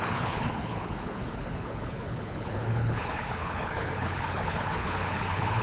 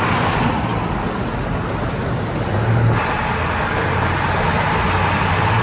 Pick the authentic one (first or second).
second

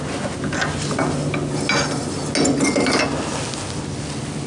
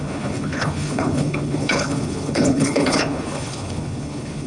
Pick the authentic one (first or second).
first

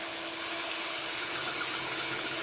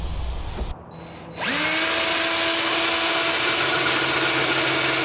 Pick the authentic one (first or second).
second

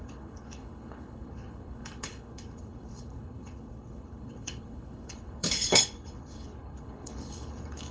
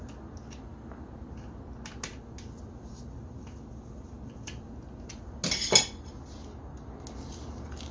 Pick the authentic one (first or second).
second